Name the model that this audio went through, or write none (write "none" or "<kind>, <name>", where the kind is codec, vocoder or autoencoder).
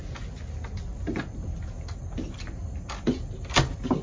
none